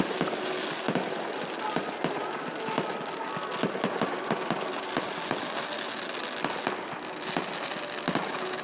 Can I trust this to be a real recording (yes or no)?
yes